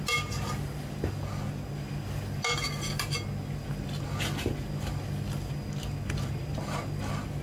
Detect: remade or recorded recorded